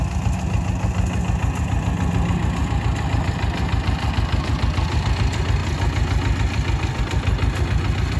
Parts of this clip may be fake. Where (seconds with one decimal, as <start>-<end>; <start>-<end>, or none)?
none